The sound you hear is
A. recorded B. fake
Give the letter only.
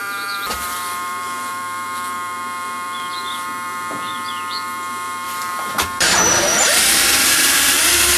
B